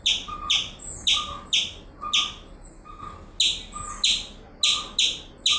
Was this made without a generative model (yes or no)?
yes